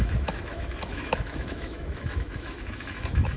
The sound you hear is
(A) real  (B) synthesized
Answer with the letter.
B